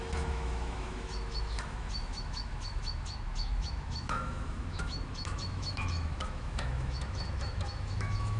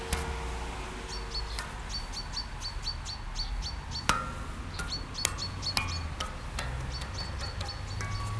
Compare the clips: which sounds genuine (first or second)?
second